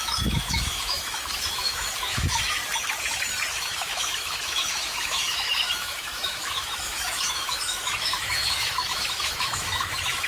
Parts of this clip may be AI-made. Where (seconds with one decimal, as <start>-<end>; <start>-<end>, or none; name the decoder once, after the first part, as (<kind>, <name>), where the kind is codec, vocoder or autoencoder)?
0.0-2.6 (autoencoder, DAC-VAE); 3.5-10.3